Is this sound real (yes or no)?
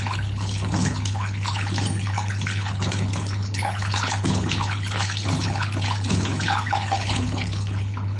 no